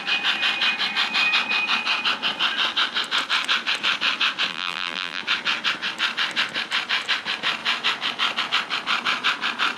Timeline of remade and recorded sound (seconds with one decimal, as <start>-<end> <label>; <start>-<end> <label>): 0.0-4.5 recorded; 4.5-5.2 remade; 5.2-9.8 recorded